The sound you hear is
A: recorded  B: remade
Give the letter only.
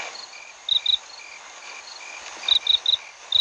A